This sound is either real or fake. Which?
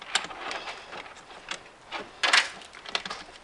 real